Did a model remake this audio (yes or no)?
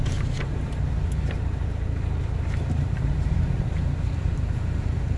yes